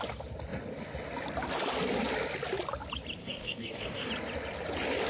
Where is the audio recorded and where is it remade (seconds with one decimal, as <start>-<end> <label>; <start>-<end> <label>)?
0.0-3.2 recorded; 3.2-4.1 remade; 4.1-5.1 recorded